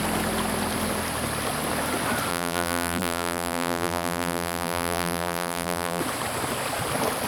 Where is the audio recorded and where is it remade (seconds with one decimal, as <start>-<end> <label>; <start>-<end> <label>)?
0.0-2.3 recorded; 2.3-6.0 remade; 6.0-7.3 recorded